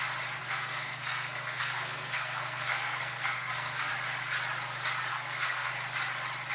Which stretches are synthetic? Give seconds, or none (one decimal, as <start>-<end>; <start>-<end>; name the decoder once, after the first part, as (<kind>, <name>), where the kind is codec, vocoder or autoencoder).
0.4-3.9 (codec, SNAC); 5.1-5.7